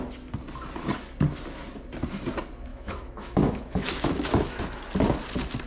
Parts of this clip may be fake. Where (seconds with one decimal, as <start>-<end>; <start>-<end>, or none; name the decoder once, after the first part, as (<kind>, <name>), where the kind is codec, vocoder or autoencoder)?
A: 2.7-4.6 (autoencoder, DAC-VAE)